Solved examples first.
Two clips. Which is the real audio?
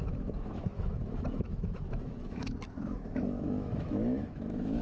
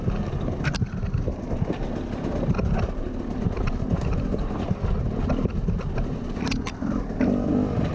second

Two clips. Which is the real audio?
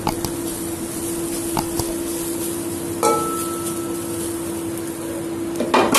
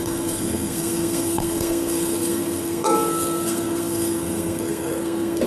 first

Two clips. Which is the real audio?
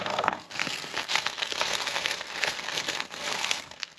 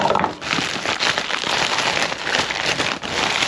second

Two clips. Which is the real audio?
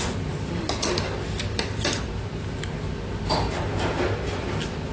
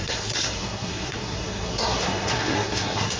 first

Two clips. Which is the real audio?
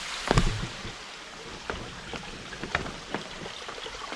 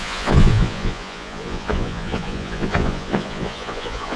first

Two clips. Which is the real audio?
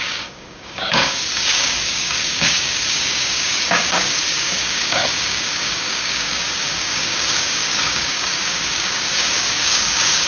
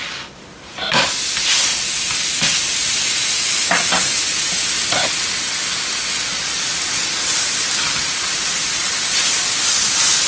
second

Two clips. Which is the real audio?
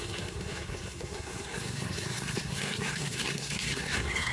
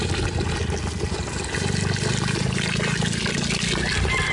second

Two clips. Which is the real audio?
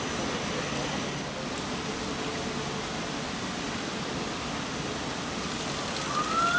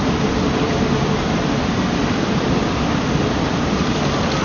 first